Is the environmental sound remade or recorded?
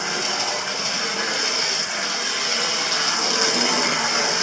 recorded